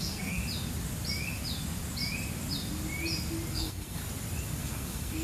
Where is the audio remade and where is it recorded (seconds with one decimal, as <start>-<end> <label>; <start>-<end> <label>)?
0.0-0.4 remade; 0.4-3.5 recorded; 3.5-4.0 remade; 4.0-4.6 recorded; 4.6-5.2 remade